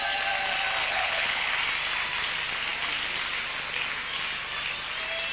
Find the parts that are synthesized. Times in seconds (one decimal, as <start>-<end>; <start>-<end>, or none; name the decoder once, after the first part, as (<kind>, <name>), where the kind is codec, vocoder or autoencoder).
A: 0.8-1.5 (codec, HILCodec)